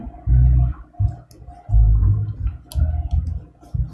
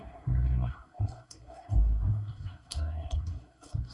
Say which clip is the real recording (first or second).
first